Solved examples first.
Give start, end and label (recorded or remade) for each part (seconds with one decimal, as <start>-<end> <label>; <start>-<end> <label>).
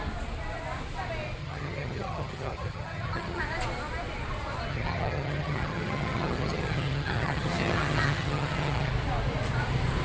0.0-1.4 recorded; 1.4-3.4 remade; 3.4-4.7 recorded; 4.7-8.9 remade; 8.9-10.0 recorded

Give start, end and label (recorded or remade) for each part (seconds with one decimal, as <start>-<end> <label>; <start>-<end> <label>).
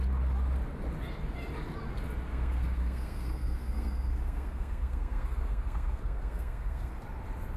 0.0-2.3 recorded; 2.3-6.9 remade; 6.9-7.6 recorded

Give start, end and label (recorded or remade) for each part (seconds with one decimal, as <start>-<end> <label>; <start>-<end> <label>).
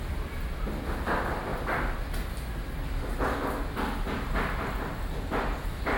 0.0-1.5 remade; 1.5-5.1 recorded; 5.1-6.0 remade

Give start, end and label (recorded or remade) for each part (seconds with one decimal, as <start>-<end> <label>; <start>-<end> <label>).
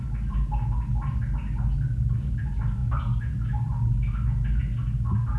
0.0-5.4 recorded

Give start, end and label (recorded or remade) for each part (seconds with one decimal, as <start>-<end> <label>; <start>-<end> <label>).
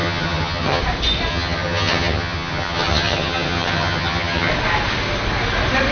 0.0-0.8 remade; 0.8-1.3 recorded; 1.3-4.5 remade; 4.5-5.9 recorded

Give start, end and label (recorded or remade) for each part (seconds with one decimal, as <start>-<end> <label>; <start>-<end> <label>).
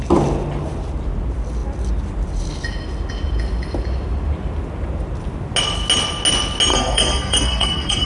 0.0-6.7 recorded; 6.7-8.1 remade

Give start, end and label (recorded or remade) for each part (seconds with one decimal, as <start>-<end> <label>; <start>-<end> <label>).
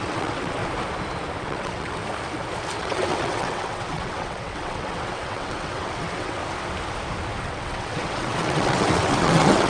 0.0-0.6 remade; 0.6-1.4 recorded; 1.4-2.0 remade; 2.0-2.8 recorded; 2.8-6.4 remade; 6.4-7.4 recorded; 7.4-9.7 remade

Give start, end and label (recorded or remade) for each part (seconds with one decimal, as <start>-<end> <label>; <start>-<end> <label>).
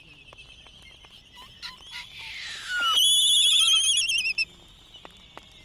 0.0-5.6 recorded